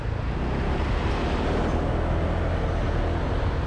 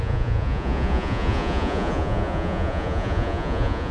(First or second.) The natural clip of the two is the first